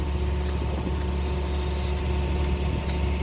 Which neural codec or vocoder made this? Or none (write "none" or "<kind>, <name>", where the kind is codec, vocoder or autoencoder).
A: none